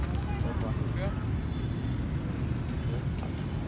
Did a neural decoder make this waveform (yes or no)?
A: no